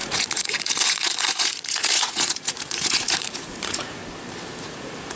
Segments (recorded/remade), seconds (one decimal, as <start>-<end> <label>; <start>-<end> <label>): 0.0-4.0 remade; 4.0-4.6 recorded; 4.6-5.2 remade

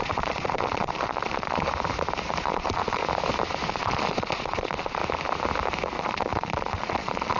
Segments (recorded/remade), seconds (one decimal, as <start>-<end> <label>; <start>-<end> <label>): 0.0-1.7 remade; 1.7-2.4 recorded; 2.4-3.0 remade; 3.0-3.7 recorded; 3.7-5.0 remade; 5.0-6.0 recorded; 6.0-7.4 remade

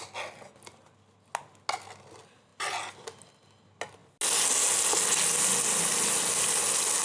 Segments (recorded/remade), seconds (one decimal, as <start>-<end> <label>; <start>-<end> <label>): 0.0-7.0 recorded

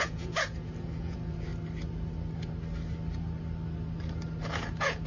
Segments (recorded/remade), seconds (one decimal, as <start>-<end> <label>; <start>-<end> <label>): 0.0-1.5 remade; 1.5-4.4 recorded; 4.4-5.1 remade

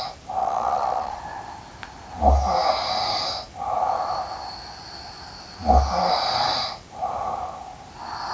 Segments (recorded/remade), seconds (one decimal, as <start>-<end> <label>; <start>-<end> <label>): 0.0-0.4 recorded; 0.4-1.2 remade; 1.2-8.3 recorded

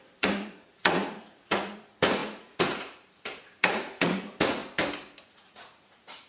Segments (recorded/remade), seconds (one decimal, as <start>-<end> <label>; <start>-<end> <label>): 0.0-4.6 remade; 4.6-5.2 recorded; 5.2-6.3 remade